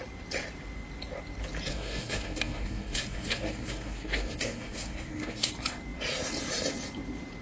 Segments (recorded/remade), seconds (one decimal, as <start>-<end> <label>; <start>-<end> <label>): 0.0-1.7 recorded; 1.7-5.5 remade; 5.5-7.4 recorded